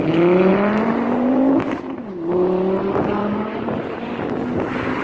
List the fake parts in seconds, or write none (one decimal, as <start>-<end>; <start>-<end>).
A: 0.5-2.1; 3.2-4.0